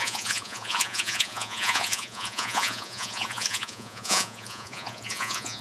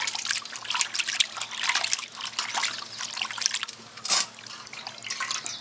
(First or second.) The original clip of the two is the second